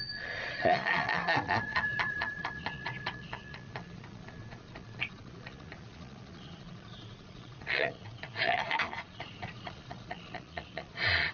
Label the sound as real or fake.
fake